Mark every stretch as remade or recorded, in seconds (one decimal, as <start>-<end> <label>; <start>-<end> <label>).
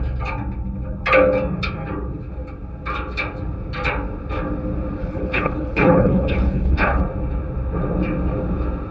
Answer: 0.0-5.0 recorded; 5.0-7.0 remade; 7.0-8.9 recorded